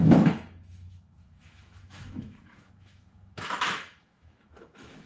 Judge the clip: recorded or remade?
remade